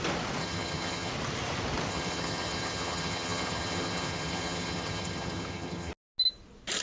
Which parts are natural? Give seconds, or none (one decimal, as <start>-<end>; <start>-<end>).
0.0-0.4; 1.1-1.9; 5.9-6.8